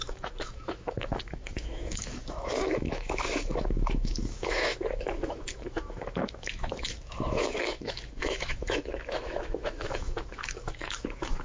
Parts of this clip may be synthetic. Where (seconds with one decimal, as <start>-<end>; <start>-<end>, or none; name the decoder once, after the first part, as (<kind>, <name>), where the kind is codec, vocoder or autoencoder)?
0.0-11.4 (autoencoder, DAC-VAE)